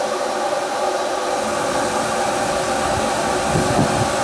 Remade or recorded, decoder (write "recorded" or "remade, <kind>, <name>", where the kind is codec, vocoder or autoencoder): recorded